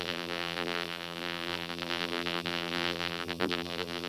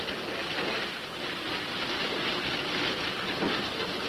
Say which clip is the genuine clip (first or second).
second